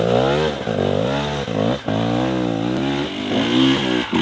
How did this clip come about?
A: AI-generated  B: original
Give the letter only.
B